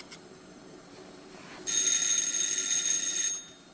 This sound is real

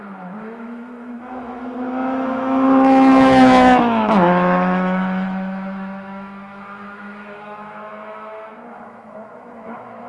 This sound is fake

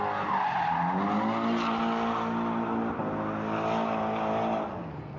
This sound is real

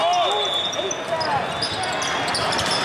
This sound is real